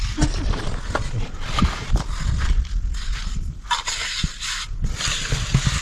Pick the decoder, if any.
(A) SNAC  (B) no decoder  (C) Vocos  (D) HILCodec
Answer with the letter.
B